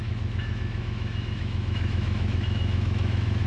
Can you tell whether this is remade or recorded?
remade